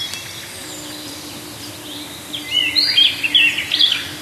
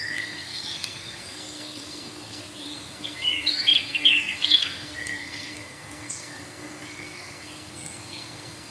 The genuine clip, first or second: first